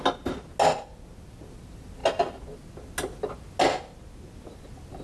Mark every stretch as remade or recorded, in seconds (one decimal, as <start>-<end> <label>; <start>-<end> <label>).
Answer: 0.0-5.0 recorded